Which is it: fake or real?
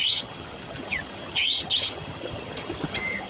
fake